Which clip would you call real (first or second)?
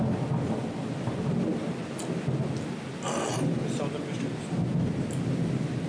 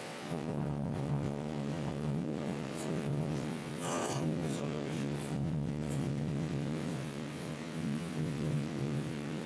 first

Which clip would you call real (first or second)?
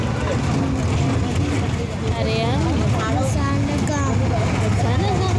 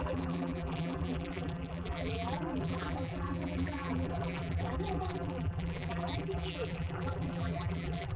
first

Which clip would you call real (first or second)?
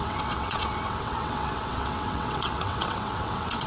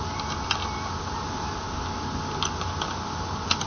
second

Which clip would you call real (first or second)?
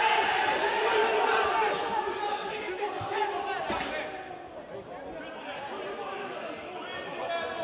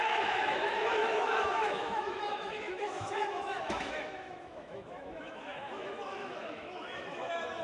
first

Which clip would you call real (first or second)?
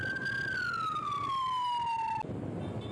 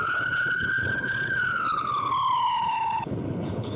first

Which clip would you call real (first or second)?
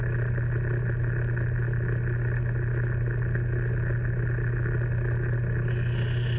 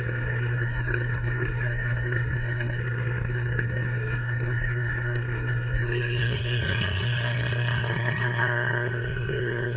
first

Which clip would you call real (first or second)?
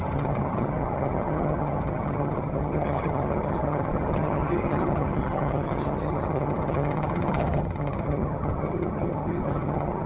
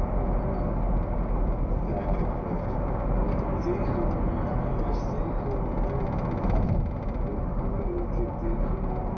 second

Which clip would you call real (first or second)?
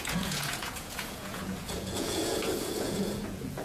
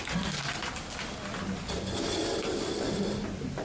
second